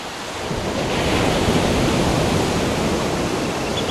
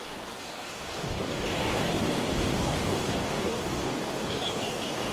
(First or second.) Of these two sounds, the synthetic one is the second